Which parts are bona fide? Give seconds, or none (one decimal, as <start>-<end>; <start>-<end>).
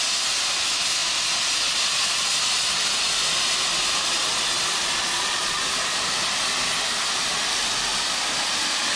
0.0-4.8; 5.6-9.0